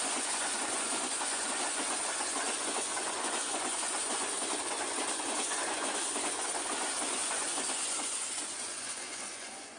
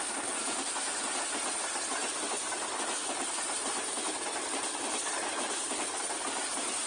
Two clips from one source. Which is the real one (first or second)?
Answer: second